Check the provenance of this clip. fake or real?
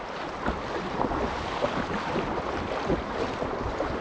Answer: real